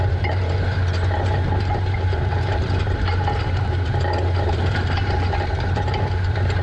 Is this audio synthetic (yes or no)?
yes